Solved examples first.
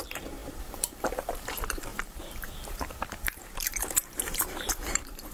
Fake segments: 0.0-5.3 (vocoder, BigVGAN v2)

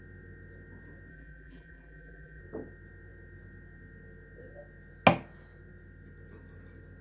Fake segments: 1.1-2.4 (vocoder, BigVGAN v2)